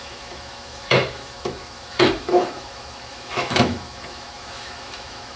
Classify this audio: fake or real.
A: fake